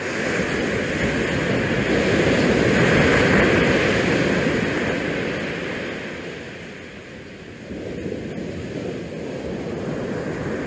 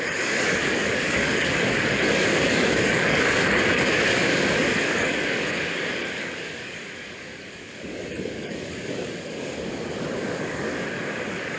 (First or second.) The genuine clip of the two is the first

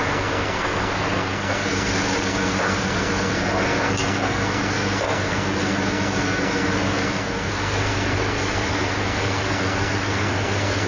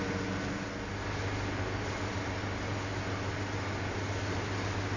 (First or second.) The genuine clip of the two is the second